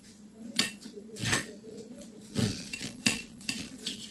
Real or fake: fake